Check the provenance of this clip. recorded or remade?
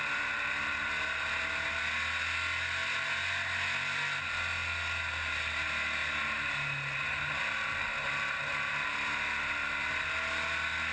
recorded